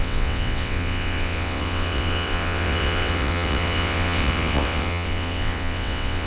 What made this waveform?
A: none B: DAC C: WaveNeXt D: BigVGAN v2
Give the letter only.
C